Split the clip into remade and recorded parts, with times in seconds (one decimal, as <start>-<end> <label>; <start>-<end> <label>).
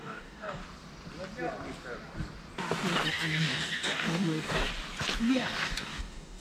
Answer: 0.0-0.6 remade; 0.6-3.1 recorded; 3.1-4.7 remade; 4.7-5.2 recorded; 5.2-6.4 remade